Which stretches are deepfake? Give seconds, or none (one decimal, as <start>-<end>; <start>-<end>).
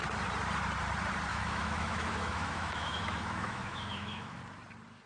1.3-4.4